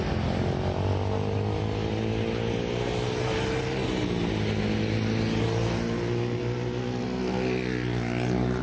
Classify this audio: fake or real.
real